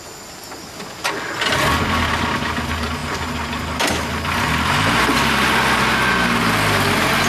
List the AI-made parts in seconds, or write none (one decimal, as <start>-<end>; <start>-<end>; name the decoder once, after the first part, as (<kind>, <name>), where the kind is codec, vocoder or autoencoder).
none